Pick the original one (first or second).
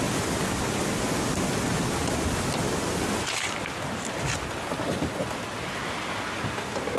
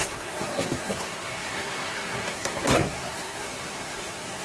first